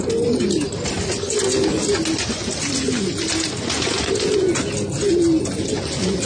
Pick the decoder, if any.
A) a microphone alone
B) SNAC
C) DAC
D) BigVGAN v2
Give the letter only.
A